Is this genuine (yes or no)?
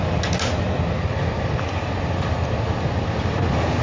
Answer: yes